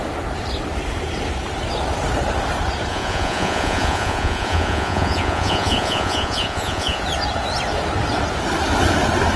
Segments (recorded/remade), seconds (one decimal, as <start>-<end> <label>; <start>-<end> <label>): 0.0-2.9 recorded; 2.9-7.0 remade; 7.0-9.4 recorded